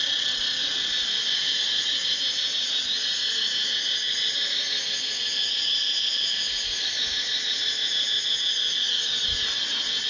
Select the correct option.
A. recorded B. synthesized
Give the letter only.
A